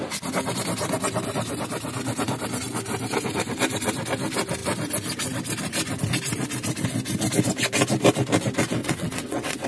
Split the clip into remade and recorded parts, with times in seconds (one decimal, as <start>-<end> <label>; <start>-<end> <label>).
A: 0.0-8.8 recorded; 8.8-9.7 remade